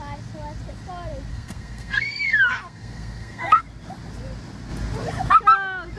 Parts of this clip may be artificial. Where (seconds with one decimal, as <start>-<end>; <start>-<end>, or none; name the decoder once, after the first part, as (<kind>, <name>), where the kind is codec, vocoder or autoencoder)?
1.3-3.6 (codec, SNAC)